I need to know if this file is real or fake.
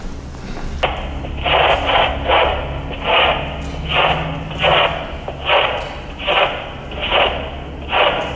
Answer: real